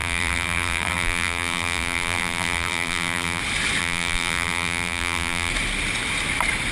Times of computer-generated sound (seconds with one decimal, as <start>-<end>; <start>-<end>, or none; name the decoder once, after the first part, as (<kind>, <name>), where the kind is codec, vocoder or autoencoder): 0.0-3.4 (vocoder, BigVGAN v2); 3.8-5.5